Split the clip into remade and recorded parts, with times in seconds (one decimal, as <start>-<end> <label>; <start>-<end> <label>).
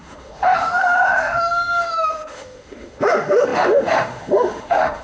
0.0-5.0 remade